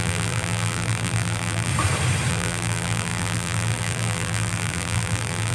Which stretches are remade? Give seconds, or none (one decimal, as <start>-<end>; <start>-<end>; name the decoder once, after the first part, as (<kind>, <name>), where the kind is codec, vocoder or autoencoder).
0.0-1.7 (vocoder, BigVGAN v2); 2.3-5.5